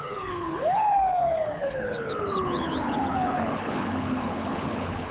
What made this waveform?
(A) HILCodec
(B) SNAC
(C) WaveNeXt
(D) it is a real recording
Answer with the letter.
A